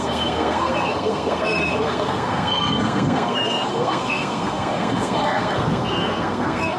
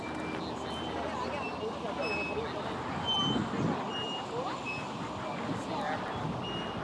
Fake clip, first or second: first